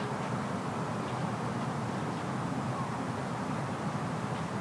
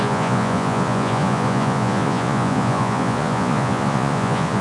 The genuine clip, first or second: first